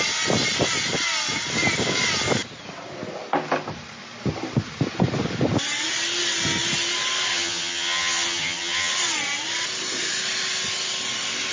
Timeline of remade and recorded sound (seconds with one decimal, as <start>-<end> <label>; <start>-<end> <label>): 0.0-7.3 recorded; 7.3-8.9 remade; 8.9-11.5 recorded